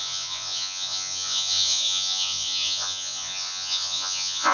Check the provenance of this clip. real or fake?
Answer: fake